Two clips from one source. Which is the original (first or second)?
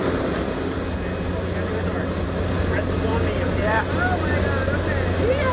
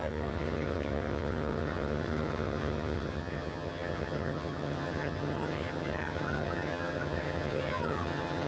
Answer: first